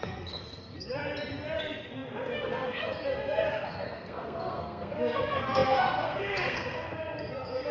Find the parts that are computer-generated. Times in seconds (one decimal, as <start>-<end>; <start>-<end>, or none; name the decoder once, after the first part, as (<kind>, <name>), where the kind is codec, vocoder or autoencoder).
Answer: 0.0-1.0 (codec, SNAC); 1.6-7.7